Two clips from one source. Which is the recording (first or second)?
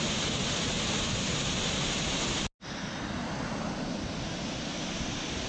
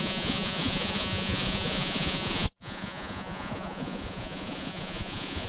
first